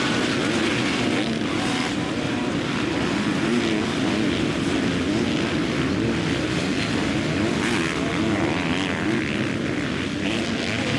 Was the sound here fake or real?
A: real